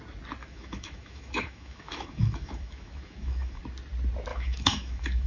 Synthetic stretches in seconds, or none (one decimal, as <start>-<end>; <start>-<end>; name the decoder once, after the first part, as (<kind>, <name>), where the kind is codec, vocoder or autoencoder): 0.4-3.6 (autoencoder, DAC-VAE); 4.3-5.3